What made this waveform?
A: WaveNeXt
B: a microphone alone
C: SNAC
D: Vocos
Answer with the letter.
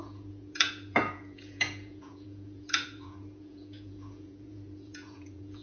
D